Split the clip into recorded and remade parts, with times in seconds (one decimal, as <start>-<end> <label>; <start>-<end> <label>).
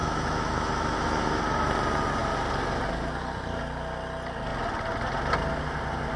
0.0-1.4 remade; 1.4-6.2 recorded